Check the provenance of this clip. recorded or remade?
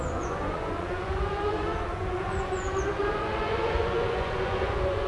remade